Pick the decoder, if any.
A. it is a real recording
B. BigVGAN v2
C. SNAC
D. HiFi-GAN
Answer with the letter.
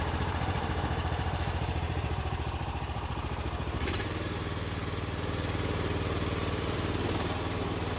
B